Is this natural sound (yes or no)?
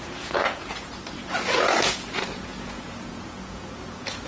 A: no